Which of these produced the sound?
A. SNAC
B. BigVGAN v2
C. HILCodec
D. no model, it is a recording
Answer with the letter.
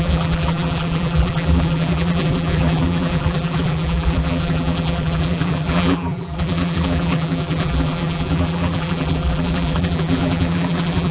B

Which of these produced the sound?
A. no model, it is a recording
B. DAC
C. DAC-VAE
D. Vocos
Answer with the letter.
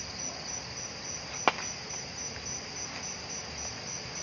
A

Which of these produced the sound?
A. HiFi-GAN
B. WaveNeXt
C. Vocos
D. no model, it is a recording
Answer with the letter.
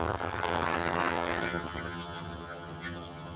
A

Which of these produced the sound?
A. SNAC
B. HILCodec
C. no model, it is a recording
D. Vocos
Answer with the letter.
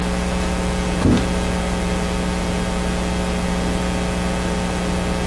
C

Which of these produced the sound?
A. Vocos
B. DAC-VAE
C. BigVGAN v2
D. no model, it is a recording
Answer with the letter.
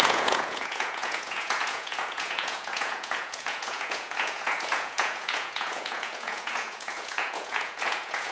A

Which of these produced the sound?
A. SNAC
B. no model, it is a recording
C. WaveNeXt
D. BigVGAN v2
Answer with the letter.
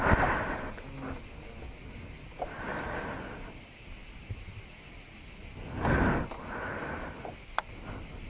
B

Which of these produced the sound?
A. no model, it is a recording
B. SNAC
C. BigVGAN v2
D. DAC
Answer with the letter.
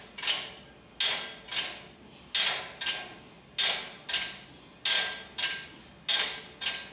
A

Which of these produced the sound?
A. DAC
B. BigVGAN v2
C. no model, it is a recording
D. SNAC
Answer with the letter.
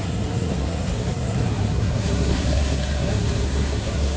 D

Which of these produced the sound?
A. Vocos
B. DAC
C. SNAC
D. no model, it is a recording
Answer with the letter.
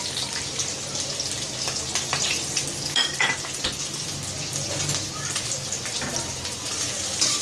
D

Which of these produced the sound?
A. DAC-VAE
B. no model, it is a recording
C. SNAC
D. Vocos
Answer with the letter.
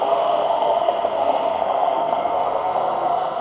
C